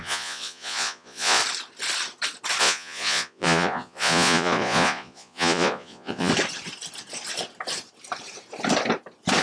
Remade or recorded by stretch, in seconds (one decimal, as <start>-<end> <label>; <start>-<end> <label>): 0.0-1.4 remade; 1.4-2.6 recorded; 2.6-6.3 remade; 6.3-9.4 recorded